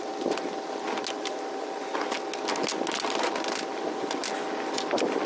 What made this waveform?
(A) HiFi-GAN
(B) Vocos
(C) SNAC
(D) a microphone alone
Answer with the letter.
D